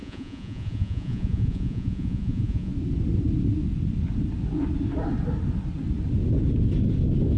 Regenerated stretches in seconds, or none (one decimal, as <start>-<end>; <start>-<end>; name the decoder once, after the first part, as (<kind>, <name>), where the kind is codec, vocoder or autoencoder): 0.0-2.7 (vocoder, Vocos)